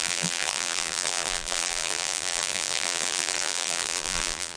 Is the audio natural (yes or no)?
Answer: no